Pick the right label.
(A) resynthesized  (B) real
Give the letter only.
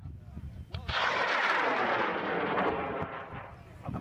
A